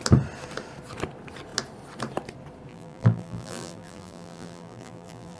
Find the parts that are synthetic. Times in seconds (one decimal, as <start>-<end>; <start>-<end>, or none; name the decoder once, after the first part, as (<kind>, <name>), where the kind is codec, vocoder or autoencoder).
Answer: 2.7-5.4 (vocoder, BigVGAN v2)